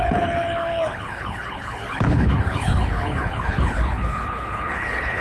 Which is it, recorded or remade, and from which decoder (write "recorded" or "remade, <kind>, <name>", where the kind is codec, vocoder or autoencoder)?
remade, codec, HILCodec